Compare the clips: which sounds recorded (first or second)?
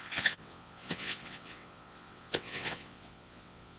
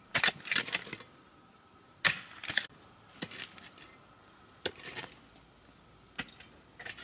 second